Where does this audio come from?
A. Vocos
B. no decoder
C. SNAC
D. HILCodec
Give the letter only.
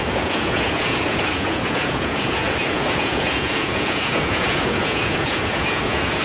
A